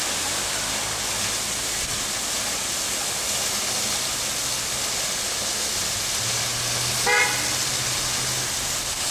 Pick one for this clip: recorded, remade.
recorded